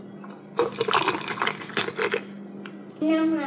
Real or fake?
real